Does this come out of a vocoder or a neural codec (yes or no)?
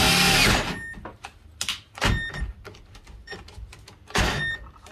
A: no